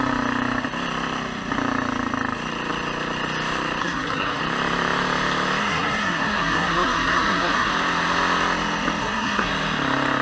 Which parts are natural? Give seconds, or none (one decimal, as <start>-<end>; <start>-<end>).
0.0-3.8; 4.4-5.6; 7.7-9.0; 9.5-10.2